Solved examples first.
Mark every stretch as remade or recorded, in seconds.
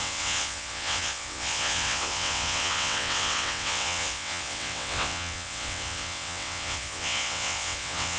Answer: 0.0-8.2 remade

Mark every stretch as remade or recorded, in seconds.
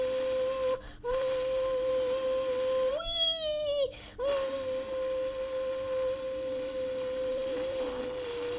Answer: 0.0-0.9 recorded; 0.9-1.9 remade; 1.9-7.3 recorded; 7.3-8.0 remade; 8.0-8.6 recorded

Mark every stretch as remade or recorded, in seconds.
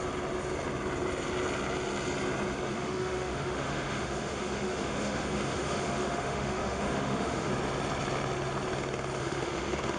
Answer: 0.0-2.7 recorded; 2.7-7.5 remade; 7.5-9.2 recorded; 9.2-10.0 remade